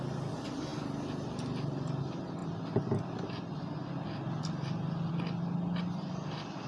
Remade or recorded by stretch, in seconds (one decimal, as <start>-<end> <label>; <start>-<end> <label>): 0.0-6.7 recorded